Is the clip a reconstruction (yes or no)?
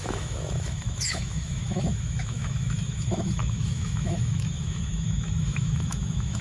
yes